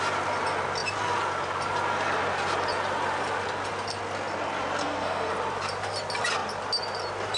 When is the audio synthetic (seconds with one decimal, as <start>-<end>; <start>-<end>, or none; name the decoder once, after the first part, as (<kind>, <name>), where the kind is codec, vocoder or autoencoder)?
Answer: 4.8-5.3 (codec, SNAC)